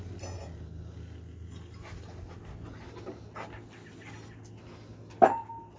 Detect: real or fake real